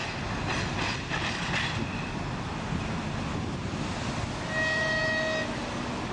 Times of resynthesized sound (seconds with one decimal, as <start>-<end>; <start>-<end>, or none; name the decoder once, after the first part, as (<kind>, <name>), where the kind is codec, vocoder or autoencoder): none